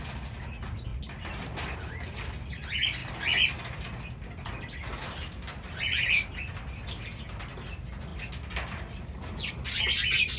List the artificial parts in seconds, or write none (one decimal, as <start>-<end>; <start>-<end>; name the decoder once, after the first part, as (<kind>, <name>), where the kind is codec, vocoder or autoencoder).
none